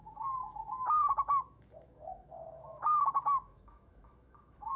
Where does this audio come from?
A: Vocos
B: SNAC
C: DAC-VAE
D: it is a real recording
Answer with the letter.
C